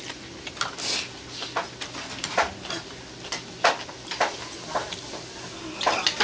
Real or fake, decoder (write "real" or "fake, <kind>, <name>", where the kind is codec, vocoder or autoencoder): real